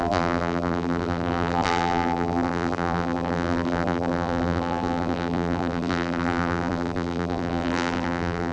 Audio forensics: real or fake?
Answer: fake